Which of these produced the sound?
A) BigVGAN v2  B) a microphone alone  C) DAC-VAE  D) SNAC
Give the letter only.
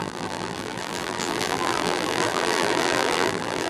A